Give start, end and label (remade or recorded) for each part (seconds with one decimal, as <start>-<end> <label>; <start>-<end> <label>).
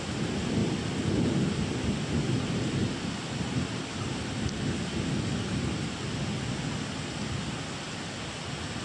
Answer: 0.0-2.8 recorded; 2.8-4.8 remade; 4.8-8.8 recorded